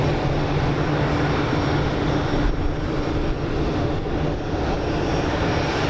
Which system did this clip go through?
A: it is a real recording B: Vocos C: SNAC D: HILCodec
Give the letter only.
A